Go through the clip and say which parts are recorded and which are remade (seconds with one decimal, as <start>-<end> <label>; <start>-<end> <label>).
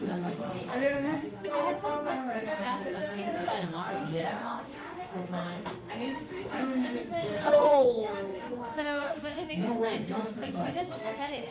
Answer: 0.0-11.5 remade